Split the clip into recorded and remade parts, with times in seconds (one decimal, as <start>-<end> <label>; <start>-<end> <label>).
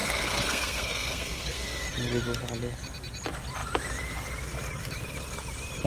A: 0.0-1.8 remade; 1.8-5.9 recorded